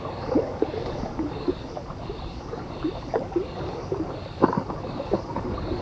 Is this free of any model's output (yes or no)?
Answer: no